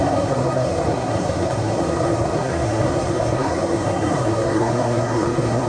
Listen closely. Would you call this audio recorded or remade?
remade